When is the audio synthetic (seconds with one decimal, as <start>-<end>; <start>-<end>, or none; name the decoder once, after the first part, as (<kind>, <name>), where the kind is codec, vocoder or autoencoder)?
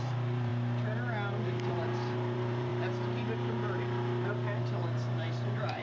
0.0-0.5 (vocoder, BigVGAN v2); 1.7-2.7; 4.6-5.8